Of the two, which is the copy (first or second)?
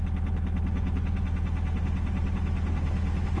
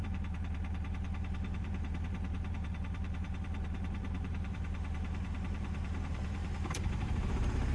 second